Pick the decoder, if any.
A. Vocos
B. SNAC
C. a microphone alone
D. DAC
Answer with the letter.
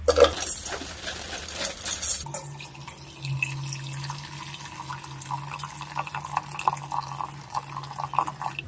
C